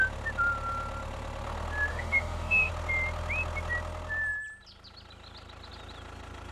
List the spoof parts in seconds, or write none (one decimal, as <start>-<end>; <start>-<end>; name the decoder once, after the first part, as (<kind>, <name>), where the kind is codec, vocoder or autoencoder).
1.9-2.7 (autoencoder, DAC-VAE)